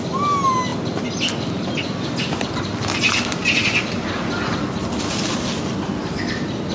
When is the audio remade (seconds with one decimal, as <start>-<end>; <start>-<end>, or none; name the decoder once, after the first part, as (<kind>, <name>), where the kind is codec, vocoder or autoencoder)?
none